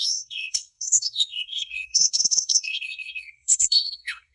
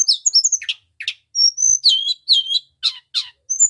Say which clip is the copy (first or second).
first